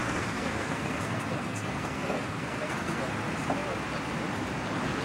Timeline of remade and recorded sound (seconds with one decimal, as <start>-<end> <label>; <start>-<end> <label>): 0.0-3.0 remade; 3.0-5.0 recorded